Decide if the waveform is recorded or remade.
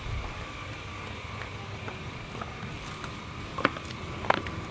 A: recorded